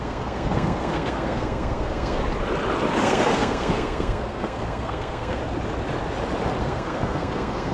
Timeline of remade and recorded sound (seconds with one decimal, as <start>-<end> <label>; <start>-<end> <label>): 0.0-2.2 remade; 2.2-3.0 recorded; 3.0-5.4 remade; 5.4-6.6 recorded; 6.6-7.7 remade